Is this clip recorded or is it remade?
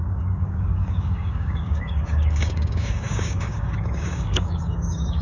remade